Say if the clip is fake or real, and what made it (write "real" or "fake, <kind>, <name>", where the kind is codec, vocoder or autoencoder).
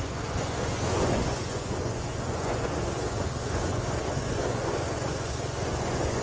fake, vocoder, Vocos